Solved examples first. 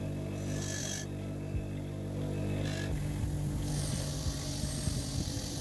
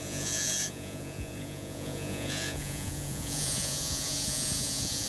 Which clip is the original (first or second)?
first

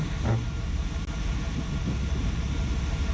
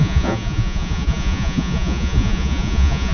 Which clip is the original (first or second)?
first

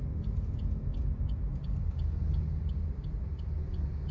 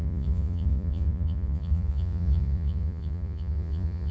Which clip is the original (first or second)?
first